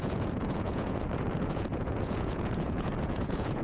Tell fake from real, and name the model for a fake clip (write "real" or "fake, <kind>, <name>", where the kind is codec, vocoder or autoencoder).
fake, vocoder, Vocos